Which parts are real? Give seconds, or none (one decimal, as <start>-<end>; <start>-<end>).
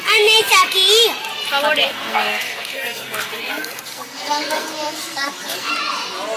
0.0-1.9; 5.7-6.4